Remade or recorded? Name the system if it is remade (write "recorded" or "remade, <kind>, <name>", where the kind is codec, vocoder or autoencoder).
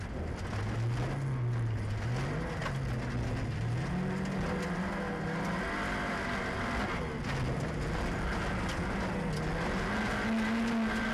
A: recorded